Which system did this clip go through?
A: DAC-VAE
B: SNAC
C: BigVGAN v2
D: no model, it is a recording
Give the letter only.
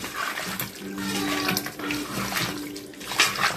D